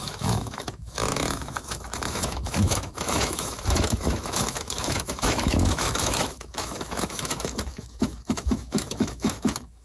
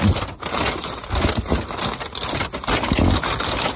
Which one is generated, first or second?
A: first